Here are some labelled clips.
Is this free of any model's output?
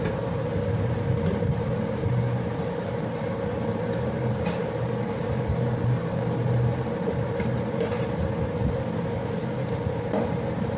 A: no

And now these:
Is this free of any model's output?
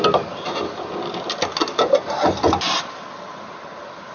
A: yes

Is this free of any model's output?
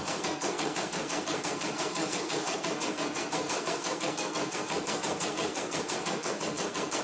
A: no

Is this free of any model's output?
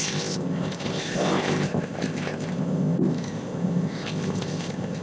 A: no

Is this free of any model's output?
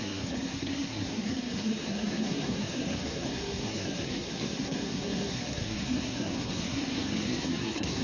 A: no